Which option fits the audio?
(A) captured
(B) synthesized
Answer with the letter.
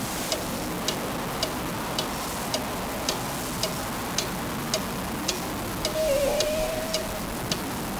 A